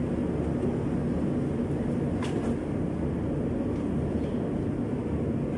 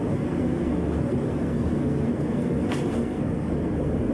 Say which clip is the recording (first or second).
first